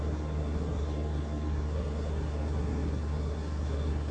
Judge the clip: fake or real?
fake